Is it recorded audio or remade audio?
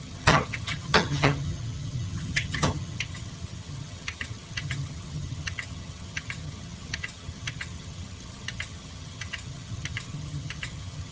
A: remade